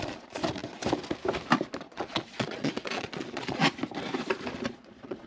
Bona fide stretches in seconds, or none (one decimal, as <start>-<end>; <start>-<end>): 0.4-1.8; 3.6-4.7